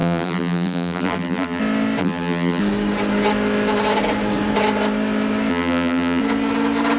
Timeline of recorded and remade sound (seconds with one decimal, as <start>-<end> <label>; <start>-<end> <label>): 0.0-1.6 remade; 1.6-2.0 recorded; 2.0-2.6 remade; 2.6-5.5 recorded; 5.5-6.2 remade; 6.2-7.0 recorded